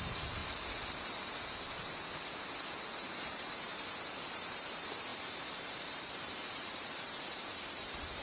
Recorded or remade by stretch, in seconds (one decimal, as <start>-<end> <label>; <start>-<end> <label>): 0.0-0.4 remade; 0.4-3.0 recorded; 3.0-8.2 remade